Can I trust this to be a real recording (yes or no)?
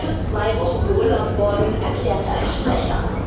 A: yes